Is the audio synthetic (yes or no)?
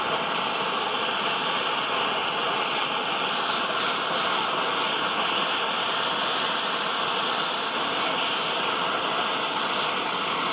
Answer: no